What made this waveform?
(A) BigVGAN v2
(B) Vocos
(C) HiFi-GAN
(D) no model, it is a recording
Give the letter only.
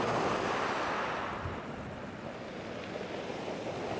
D